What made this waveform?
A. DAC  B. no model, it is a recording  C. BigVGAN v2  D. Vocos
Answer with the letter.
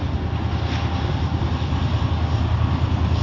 B